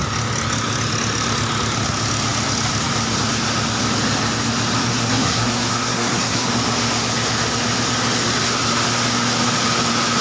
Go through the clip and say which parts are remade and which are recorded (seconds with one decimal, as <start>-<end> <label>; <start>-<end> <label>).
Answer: 0.0-4.9 recorded; 4.9-6.5 remade; 6.5-10.2 recorded